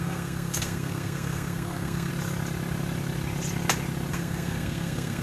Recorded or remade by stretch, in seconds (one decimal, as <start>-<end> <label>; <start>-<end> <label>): 0.0-2.1 remade; 2.1-4.1 recorded; 4.1-5.2 remade